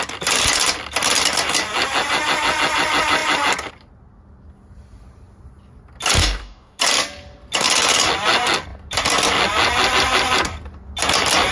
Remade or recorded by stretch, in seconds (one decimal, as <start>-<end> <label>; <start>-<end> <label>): 0.0-6.2 recorded; 6.2-6.8 remade; 6.8-11.5 recorded